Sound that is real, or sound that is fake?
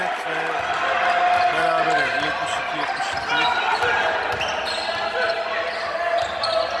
real